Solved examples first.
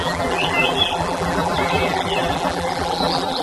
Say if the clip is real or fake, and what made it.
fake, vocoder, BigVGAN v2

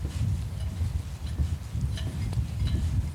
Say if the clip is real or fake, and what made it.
real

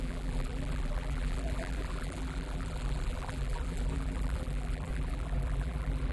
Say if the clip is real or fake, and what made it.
fake, vocoder, BigVGAN v2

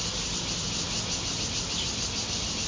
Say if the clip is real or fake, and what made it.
real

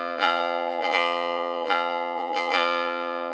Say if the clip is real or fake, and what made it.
fake, vocoder, BigVGAN v2